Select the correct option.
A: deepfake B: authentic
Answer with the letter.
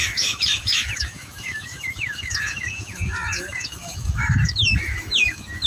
A